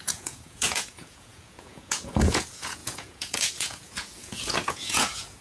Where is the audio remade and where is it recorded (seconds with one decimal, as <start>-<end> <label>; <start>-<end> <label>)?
0.0-5.4 remade